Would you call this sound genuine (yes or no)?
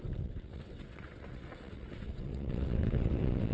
no